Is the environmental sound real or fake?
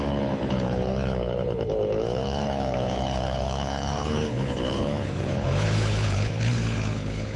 fake